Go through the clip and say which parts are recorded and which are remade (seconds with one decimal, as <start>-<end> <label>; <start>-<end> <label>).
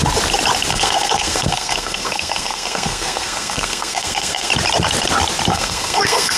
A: 0.0-0.7 recorded; 0.7-4.5 remade; 4.5-5.5 recorded; 5.5-6.4 remade